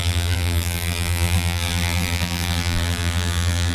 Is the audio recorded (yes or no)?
no